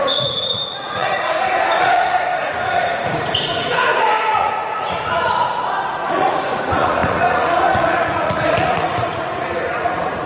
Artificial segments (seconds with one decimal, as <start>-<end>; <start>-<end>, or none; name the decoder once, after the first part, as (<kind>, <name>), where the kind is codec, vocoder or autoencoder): 0.0-10.3 (vocoder, Vocos)